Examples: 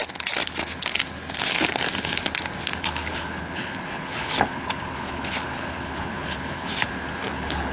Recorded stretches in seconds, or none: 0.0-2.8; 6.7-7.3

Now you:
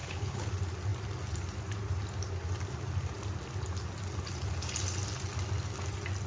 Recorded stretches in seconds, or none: 0.5-6.3

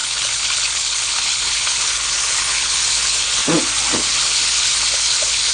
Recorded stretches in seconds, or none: 3.4-4.1